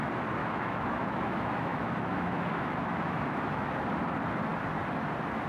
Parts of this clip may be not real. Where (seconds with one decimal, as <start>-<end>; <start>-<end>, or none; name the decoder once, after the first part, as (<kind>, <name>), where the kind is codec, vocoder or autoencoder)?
0.4-3.7 (autoencoder, DAC-VAE)